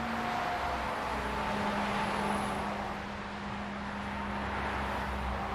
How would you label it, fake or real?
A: real